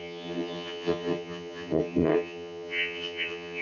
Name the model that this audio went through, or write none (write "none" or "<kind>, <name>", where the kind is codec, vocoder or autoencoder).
vocoder, HiFi-GAN